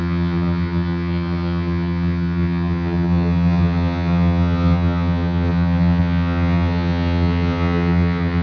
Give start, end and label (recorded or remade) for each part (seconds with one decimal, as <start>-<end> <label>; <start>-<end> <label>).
0.0-8.4 remade